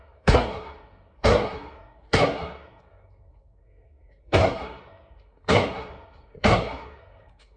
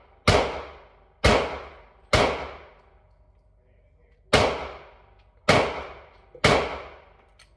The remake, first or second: first